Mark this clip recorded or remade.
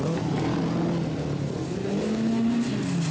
recorded